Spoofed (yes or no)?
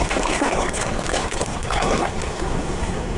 yes